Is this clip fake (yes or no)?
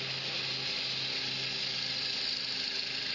no